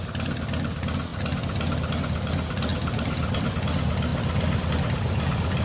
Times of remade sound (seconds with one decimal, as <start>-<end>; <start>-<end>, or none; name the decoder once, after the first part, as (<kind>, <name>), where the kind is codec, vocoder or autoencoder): 2.7-3.5 (vocoder, BigVGAN v2); 4.1-4.7